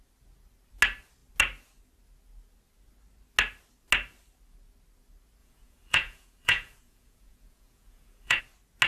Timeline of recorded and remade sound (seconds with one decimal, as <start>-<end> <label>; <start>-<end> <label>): 0.0-5.4 recorded; 5.4-8.4 remade; 8.4-8.9 recorded